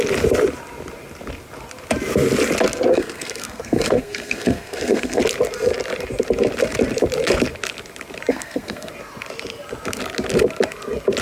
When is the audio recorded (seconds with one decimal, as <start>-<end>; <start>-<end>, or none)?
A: 0.0-2.9; 5.2-8.3; 8.9-11.2